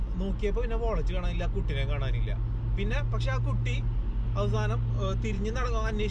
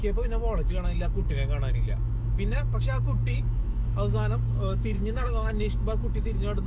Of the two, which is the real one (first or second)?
first